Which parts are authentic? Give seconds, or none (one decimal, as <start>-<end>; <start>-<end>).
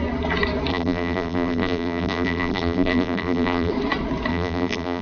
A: 0.0-0.7; 3.7-4.3